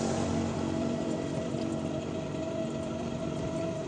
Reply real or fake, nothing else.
fake